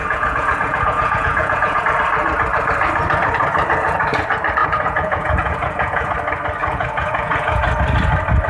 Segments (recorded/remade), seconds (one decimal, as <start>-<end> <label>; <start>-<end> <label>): 0.0-1.8 remade; 1.8-4.6 recorded; 4.6-6.1 remade; 6.1-6.6 recorded; 6.6-7.6 remade; 7.6-8.5 recorded